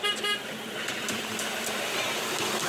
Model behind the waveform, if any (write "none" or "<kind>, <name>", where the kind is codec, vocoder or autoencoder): vocoder, BigVGAN v2